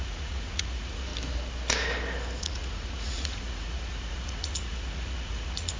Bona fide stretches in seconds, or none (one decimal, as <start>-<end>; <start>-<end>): 1.1-2.4